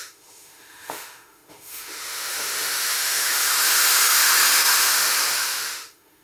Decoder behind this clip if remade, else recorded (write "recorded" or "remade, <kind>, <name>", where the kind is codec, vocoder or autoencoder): remade, autoencoder, DAC-VAE